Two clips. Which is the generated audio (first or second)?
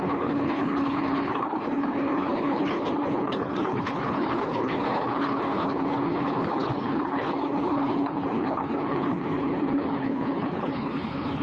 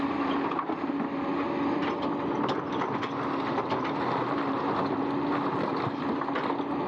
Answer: first